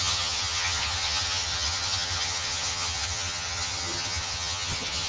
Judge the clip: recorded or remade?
remade